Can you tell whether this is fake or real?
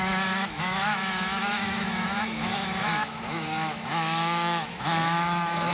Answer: fake